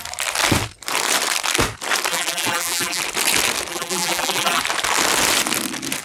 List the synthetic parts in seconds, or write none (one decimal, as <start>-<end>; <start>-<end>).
2.1-3.0; 3.7-4.6